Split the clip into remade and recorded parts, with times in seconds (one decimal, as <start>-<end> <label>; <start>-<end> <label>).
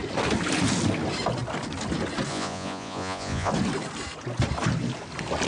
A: 0.0-2.3 recorded; 2.3-3.5 remade; 3.5-5.5 recorded